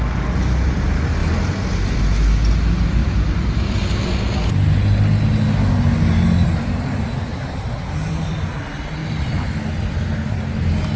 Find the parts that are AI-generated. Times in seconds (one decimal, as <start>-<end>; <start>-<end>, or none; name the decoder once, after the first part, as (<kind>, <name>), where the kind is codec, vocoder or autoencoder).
1.2-2.0 (vocoder, BigVGAN v2); 3.0-3.6; 7.3-7.9; 9.0-9.7